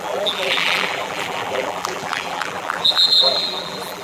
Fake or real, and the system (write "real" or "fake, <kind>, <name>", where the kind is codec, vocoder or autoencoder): fake, vocoder, BigVGAN v2